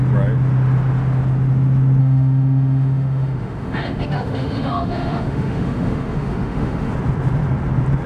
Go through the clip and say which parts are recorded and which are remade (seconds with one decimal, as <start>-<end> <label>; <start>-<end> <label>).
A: 0.0-2.0 recorded; 2.0-6.9 remade; 6.9-8.1 recorded